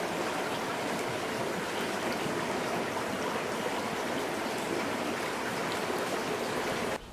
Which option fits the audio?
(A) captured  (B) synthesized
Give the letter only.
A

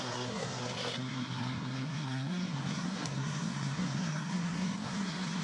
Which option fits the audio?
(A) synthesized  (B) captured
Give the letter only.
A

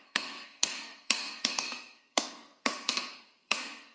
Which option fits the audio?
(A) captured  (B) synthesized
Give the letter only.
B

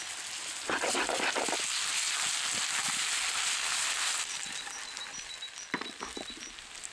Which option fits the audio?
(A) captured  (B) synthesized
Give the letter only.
A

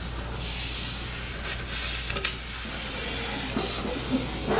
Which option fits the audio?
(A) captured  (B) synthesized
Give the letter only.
A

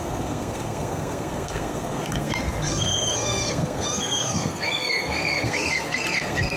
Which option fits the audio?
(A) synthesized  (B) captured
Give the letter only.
A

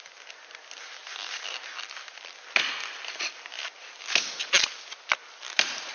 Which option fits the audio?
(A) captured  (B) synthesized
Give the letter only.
A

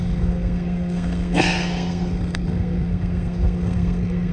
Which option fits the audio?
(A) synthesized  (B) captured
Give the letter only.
A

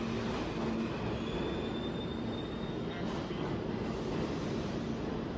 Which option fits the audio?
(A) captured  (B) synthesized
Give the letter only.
A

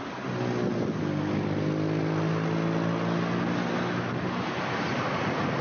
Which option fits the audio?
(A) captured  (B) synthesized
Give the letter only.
A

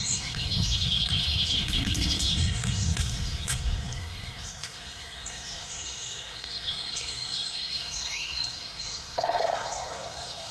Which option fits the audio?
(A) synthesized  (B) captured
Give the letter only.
A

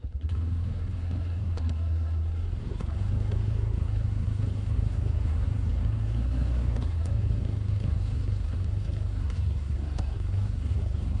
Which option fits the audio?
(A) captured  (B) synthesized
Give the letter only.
B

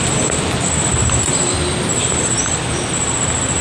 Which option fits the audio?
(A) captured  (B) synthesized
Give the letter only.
A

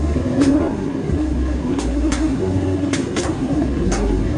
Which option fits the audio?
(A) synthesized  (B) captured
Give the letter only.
A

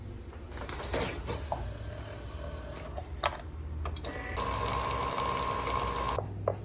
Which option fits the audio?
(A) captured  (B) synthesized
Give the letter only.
A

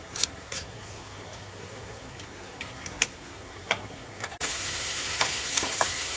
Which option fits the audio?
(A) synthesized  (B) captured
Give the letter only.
A